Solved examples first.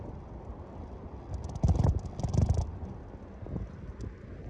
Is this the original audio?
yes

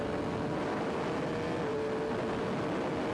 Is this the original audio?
yes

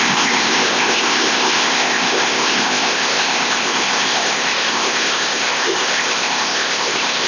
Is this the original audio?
no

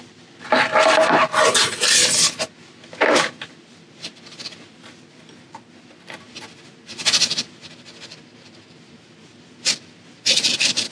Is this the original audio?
yes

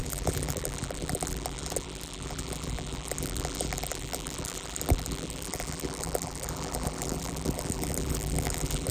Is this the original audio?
no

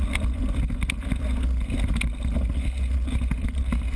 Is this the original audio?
yes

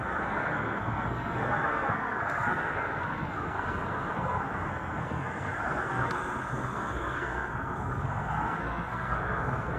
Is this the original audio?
no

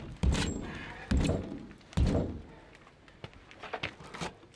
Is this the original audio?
yes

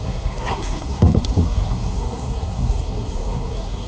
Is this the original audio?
no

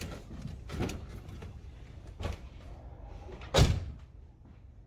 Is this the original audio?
no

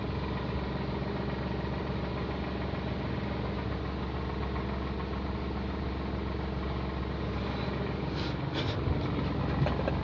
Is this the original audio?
yes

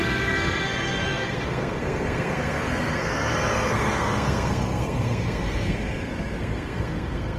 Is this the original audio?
no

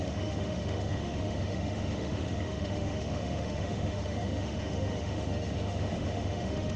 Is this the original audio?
no